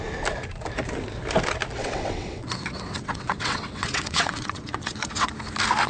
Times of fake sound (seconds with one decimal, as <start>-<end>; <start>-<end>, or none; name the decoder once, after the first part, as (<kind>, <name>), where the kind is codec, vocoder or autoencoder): 1.8-5.3 (vocoder, WaveNeXt)